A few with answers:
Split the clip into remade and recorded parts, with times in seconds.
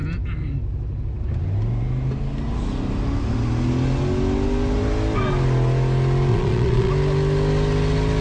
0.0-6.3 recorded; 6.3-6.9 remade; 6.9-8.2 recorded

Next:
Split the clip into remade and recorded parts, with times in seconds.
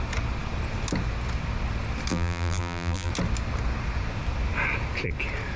0.0-2.1 recorded; 2.1-3.1 remade; 3.1-5.6 recorded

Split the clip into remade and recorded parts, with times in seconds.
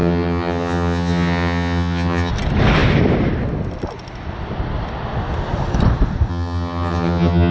0.0-2.3 remade; 2.3-6.3 recorded; 6.3-7.5 remade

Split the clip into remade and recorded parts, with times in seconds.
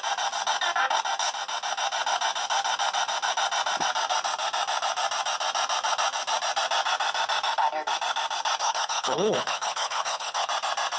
0.0-8.6 recorded; 8.6-10.5 remade; 10.5-11.0 recorded